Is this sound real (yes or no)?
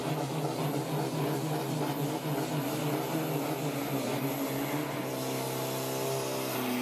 yes